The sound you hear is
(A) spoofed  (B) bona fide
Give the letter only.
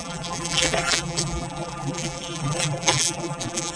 A